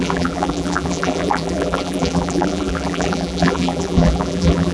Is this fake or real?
fake